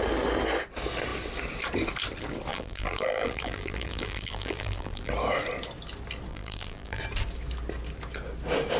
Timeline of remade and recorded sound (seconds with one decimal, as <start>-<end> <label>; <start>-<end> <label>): 0.0-2.5 recorded; 2.5-5.1 remade; 5.1-6.3 recorded; 6.3-7.0 remade; 7.0-8.8 recorded